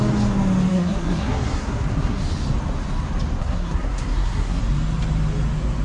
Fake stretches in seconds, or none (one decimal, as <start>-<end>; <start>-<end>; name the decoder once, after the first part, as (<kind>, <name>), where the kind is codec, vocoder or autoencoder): 0.7-2.2 (codec, SNAC); 3.4-4.6